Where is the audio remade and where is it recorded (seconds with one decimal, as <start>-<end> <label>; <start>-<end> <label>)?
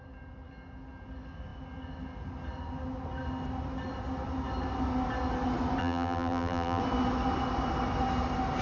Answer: 0.0-5.8 recorded; 5.8-6.8 remade; 6.8-8.6 recorded